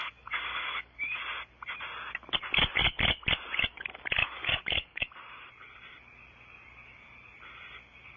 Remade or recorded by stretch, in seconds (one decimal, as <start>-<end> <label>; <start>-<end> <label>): 0.0-1.2 remade; 1.2-4.2 recorded; 4.2-5.1 remade; 5.1-8.2 recorded